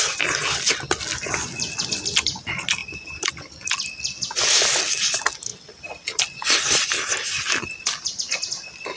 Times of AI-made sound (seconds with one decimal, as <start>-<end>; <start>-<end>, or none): none